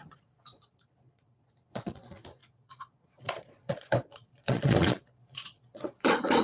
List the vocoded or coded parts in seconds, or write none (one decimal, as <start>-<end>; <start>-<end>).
0.0-6.4